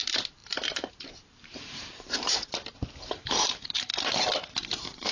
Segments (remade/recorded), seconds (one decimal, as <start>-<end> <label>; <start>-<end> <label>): 0.0-3.9 remade; 3.9-5.1 recorded

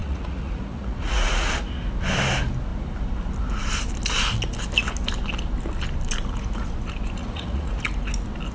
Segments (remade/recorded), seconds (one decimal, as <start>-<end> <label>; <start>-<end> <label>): 0.0-1.5 remade; 1.5-7.2 recorded; 7.2-7.8 remade; 7.8-8.5 recorded

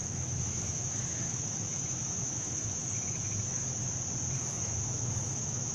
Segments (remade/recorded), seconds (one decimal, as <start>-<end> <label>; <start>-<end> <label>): 0.0-3.8 remade; 3.8-4.5 recorded; 4.5-5.7 remade

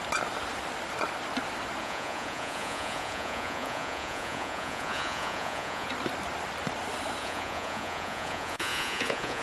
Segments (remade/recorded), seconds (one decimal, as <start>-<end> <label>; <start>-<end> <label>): 0.0-1.8 recorded; 1.8-5.9 remade; 5.9-7.2 recorded; 7.2-9.4 remade

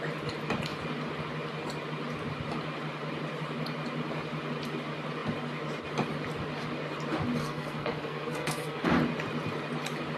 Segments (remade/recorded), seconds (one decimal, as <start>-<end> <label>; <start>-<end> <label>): 0.0-7.4 recorded; 7.4-8.9 remade; 8.9-10.2 recorded

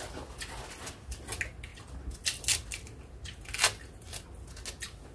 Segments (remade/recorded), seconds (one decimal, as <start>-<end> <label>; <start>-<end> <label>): 0.0-5.1 recorded

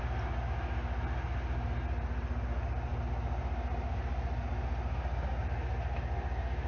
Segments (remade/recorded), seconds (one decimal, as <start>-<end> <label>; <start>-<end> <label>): 0.0-6.7 recorded

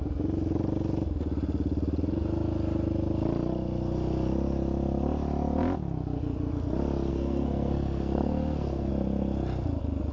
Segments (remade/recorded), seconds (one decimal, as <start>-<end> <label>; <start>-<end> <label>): 0.0-7.1 recorded; 7.1-8.9 remade; 8.9-10.1 recorded